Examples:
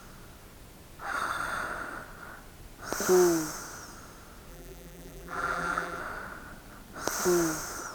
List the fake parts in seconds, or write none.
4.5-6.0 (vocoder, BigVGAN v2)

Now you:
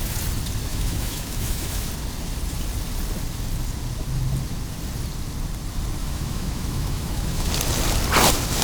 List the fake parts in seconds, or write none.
0.7-1.9 (autoencoder, DAC-VAE); 6.0-7.5